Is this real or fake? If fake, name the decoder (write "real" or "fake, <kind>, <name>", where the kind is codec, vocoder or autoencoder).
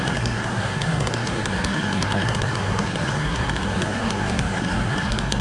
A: fake, codec, SNAC